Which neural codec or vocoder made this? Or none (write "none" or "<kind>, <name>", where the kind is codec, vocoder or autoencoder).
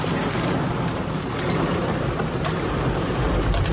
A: none